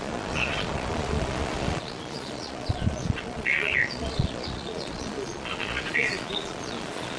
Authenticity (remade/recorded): remade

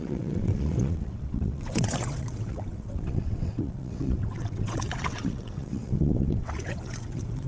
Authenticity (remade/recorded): remade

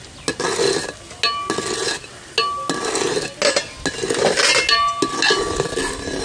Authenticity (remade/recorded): recorded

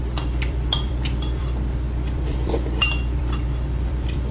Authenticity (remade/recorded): remade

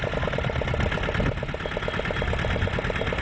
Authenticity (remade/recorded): recorded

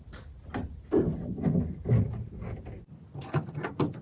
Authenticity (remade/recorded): recorded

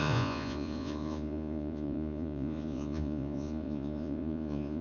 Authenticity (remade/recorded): remade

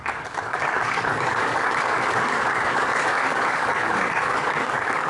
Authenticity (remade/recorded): remade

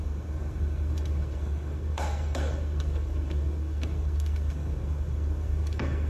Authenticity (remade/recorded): remade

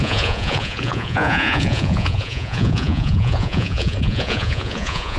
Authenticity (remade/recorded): remade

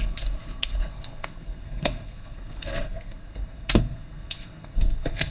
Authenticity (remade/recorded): remade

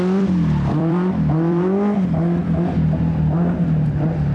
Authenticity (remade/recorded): remade